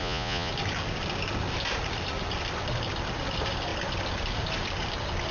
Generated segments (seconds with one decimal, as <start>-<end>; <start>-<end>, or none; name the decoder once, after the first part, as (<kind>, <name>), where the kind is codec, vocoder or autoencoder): 0.0-0.5 (vocoder, Vocos)